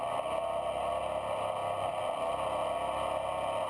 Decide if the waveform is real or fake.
real